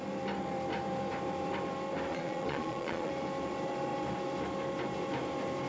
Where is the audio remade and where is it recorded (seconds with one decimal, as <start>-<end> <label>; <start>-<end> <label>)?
0.0-2.1 recorded; 2.1-3.1 remade; 3.1-5.7 recorded